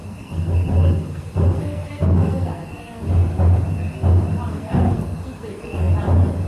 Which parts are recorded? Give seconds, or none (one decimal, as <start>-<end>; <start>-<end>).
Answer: 3.1-4.5; 5.9-6.5